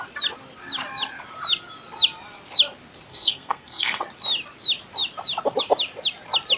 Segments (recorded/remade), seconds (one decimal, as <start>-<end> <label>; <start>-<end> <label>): 0.0-3.1 recorded; 3.1-4.0 remade; 4.0-6.6 recorded